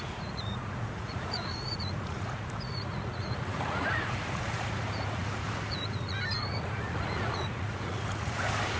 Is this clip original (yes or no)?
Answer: no